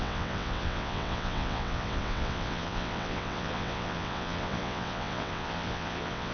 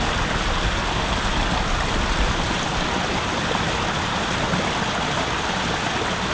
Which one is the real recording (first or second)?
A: second